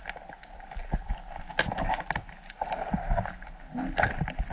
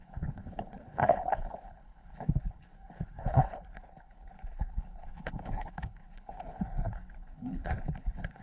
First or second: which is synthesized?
second